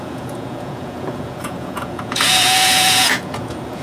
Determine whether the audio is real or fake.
fake